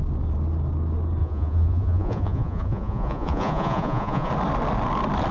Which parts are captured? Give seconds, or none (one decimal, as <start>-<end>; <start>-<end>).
0.0-1.2; 4.3-5.3